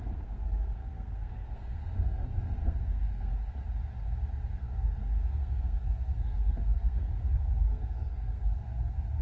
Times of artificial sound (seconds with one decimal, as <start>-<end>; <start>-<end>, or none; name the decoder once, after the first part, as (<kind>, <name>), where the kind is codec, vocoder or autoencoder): 0.0-3.3 (codec, SNAC); 4.5-9.2